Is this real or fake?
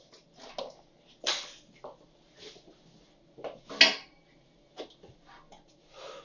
real